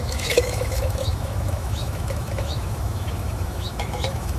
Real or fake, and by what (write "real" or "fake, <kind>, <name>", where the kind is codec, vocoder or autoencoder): fake, autoencoder, DAC-VAE